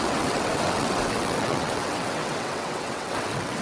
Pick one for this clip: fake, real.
fake